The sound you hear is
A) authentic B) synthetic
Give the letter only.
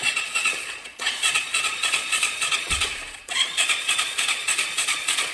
B